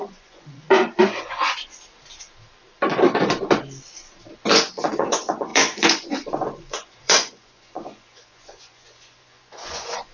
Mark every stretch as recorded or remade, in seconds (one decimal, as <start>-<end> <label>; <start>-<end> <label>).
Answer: 0.0-1.6 remade; 1.6-4.5 recorded; 4.5-10.1 remade